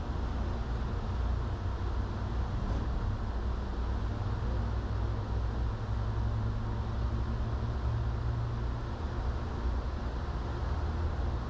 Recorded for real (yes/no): yes